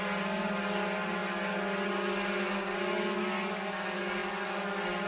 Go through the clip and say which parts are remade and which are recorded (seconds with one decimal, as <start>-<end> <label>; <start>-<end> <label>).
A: 0.0-5.1 recorded